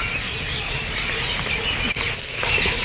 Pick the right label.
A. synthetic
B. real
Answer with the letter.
B